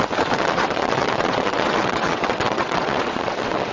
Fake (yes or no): yes